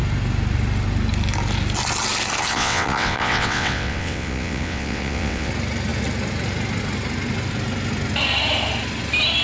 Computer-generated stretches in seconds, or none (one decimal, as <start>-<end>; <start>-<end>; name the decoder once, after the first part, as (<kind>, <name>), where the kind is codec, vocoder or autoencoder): 2.5-5.5 (vocoder, WaveNeXt)